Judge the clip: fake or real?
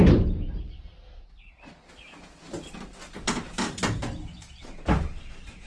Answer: real